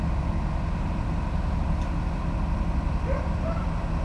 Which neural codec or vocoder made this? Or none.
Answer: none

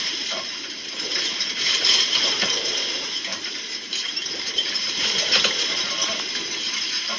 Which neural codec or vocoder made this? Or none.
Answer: vocoder, BigVGAN v2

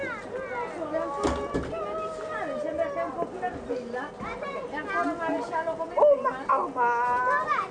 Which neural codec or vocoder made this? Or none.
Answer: none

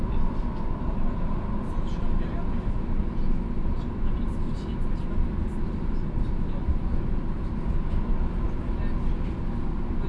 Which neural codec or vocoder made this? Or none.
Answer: none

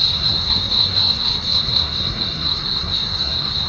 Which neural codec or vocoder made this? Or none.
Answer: codec, SNAC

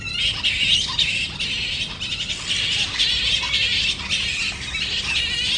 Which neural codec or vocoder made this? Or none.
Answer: none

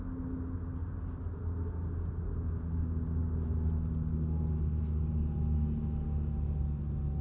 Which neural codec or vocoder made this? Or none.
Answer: none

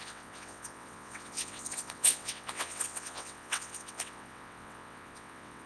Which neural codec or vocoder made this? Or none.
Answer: vocoder, WaveNeXt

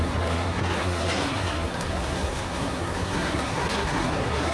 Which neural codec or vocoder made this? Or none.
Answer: codec, SNAC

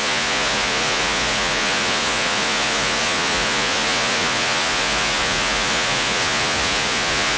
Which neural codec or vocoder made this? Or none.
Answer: vocoder, Vocos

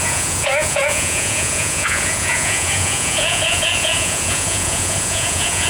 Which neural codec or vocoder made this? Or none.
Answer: vocoder, Vocos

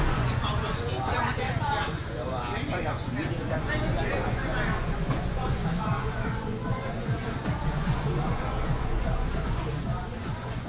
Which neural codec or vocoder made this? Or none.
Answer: vocoder, Vocos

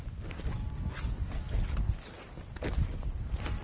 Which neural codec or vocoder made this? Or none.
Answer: none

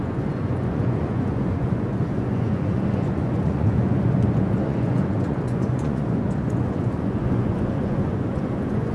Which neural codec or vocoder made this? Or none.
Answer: vocoder, Vocos